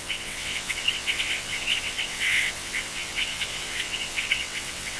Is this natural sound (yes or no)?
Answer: no